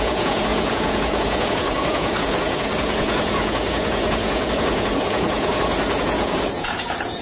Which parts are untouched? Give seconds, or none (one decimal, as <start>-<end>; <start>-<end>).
none